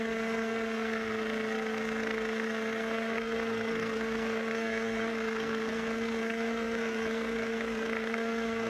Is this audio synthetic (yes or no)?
yes